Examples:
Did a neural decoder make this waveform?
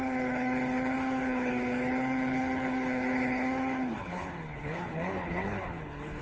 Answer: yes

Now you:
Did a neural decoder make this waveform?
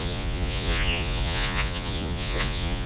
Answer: yes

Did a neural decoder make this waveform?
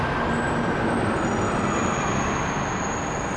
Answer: no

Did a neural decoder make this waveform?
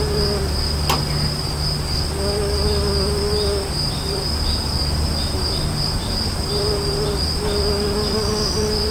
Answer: no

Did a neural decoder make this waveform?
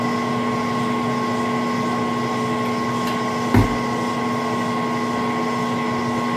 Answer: no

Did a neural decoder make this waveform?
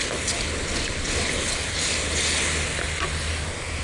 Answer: no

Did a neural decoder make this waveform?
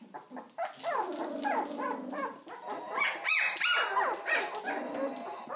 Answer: no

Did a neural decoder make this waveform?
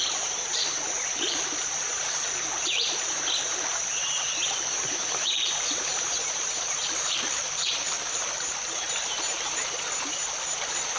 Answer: yes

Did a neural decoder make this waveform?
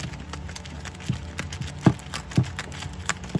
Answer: no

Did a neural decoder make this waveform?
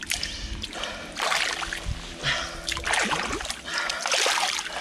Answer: no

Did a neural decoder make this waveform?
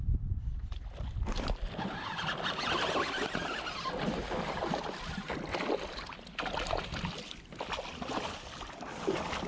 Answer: no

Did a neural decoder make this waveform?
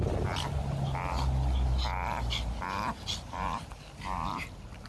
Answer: no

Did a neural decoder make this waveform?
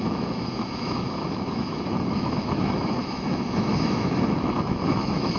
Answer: yes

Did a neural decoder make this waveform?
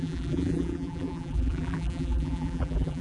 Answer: yes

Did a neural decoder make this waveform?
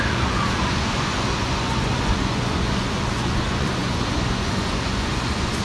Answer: yes